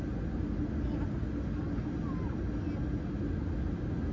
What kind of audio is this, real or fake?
real